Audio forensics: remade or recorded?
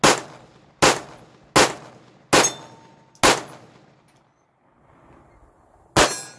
recorded